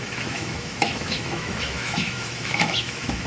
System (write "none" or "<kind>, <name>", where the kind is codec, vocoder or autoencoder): autoencoder, DAC-VAE